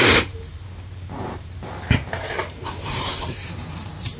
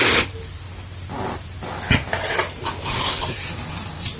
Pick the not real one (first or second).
first